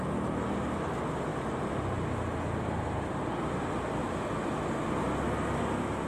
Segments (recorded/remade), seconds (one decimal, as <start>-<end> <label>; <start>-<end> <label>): 0.0-4.0 recorded; 4.0-5.0 remade; 5.0-6.1 recorded

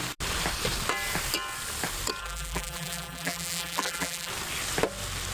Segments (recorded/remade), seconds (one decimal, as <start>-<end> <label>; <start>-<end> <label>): 0.0-2.2 recorded; 2.2-4.3 remade; 4.3-5.3 recorded

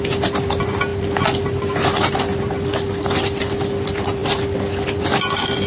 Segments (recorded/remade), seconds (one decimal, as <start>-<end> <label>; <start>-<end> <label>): 0.0-4.2 recorded; 4.2-5.0 remade; 5.0-5.7 recorded